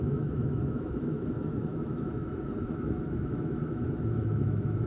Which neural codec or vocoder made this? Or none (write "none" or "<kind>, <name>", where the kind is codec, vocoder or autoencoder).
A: autoencoder, DAC-VAE